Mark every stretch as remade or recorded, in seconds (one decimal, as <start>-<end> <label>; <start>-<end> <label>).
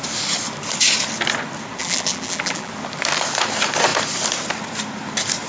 0.0-1.8 recorded; 1.8-2.7 remade; 2.7-5.5 recorded